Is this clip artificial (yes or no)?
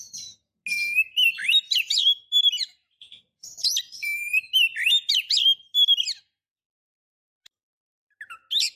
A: no